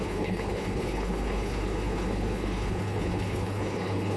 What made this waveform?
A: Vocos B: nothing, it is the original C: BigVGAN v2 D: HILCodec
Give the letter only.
D